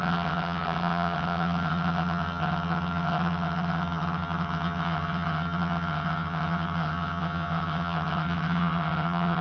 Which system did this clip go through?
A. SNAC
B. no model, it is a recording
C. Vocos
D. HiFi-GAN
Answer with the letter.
D